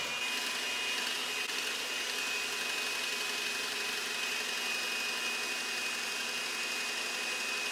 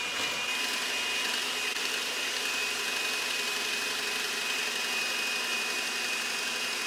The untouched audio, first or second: first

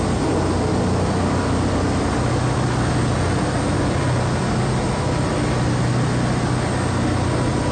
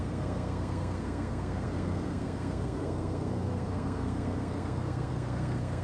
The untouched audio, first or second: first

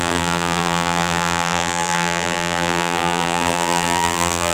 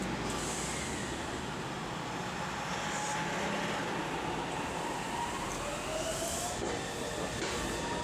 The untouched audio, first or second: second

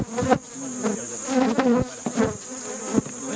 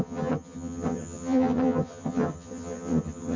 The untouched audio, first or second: first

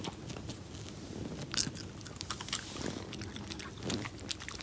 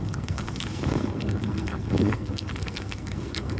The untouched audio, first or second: first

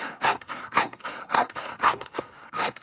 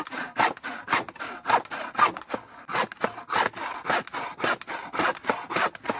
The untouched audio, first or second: second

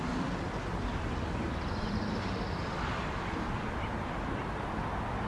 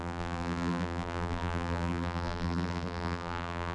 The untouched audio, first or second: first